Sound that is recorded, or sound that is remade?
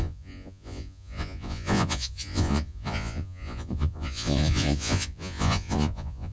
remade